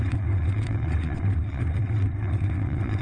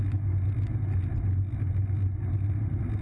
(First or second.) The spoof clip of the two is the first